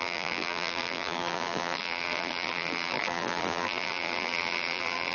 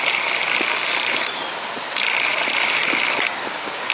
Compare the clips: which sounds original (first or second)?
second